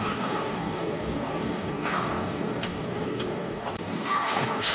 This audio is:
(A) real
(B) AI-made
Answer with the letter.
B